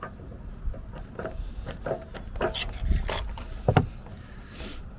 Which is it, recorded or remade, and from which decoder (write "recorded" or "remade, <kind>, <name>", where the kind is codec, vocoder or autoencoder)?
recorded